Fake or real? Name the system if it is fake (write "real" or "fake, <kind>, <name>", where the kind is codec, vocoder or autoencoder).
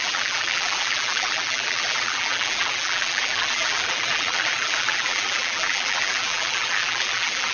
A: fake, vocoder, BigVGAN v2